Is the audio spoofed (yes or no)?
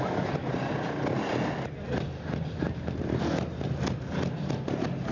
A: no